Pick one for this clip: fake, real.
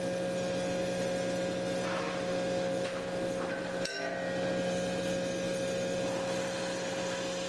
real